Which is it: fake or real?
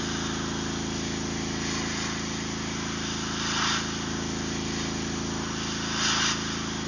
real